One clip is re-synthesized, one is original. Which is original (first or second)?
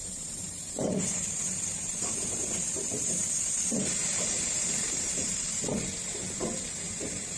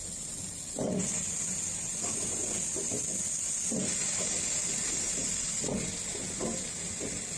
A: second